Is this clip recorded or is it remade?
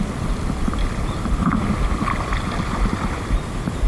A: recorded